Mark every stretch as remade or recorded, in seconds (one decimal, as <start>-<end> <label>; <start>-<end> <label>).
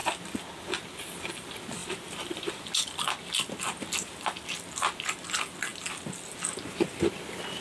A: 0.0-1.8 recorded; 1.8-2.7 remade; 2.7-7.6 recorded